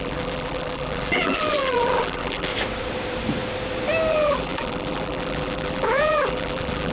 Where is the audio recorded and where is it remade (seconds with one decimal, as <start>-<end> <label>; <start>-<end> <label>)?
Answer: 0.0-2.5 remade; 2.5-4.1 recorded; 4.1-6.9 remade